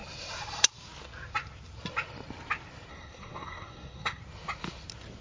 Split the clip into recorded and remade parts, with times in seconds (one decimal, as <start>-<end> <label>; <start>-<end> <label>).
0.0-2.9 recorded; 2.9-4.2 remade; 4.2-5.2 recorded